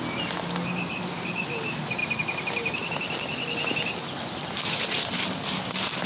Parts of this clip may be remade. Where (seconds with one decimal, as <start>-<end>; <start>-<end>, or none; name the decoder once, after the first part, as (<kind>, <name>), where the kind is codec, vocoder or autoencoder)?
none